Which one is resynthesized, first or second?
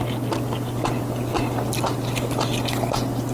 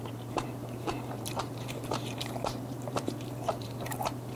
second